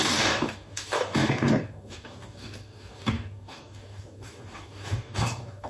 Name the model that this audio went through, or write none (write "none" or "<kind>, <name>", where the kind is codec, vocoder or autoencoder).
codec, DAC